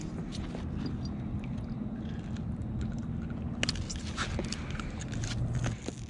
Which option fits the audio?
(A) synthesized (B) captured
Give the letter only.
B